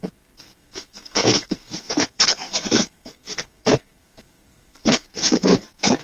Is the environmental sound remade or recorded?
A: remade